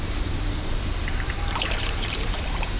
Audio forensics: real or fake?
fake